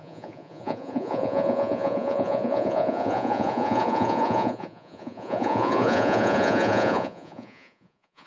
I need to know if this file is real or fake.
fake